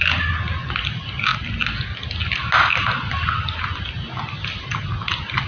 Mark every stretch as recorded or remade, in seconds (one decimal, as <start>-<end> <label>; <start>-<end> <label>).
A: 0.0-5.5 recorded